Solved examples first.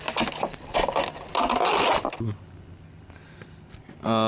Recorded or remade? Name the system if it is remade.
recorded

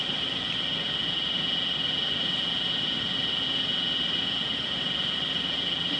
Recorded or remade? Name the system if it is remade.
recorded